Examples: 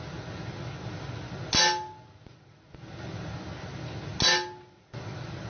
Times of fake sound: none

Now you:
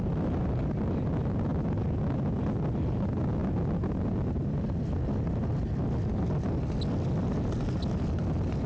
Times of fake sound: none

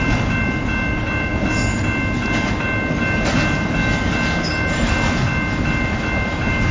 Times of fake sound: none

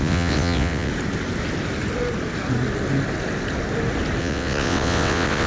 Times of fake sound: 0.0-0.9 (vocoder, WaveNeXt); 4.2-5.5

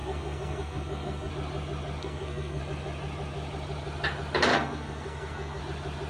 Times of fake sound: 0.0-1.3 (codec, SNAC); 2.0-2.6; 4.5-5.6